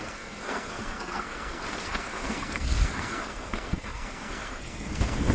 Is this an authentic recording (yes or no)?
no